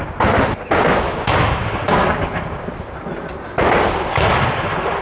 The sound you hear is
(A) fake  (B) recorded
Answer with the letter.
B